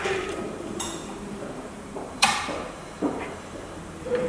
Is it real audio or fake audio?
fake